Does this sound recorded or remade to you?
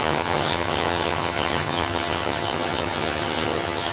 remade